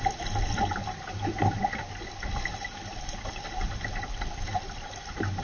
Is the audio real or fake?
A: real